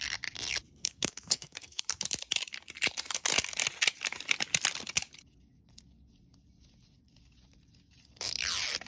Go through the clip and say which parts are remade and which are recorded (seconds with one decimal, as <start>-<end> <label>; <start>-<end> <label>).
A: 0.0-0.8 recorded; 0.8-1.8 remade; 1.8-8.9 recorded